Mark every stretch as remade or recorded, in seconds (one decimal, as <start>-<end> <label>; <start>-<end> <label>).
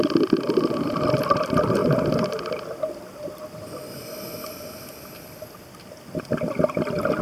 0.0-7.2 recorded